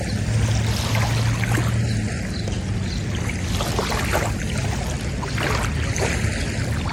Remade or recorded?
recorded